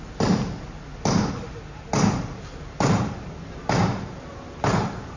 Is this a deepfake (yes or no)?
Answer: no